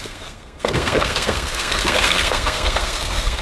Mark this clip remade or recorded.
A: remade